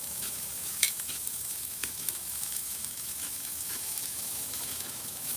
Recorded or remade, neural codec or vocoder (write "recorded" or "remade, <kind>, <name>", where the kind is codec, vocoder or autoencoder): remade, autoencoder, DAC-VAE